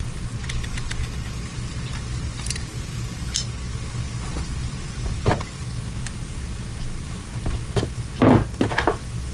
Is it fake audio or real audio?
real